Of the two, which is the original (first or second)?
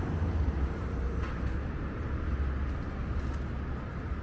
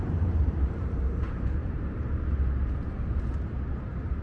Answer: first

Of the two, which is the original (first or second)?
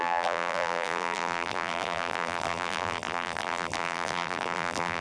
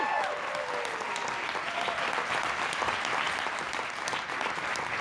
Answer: second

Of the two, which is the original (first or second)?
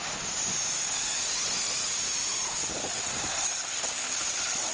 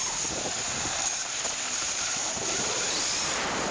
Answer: first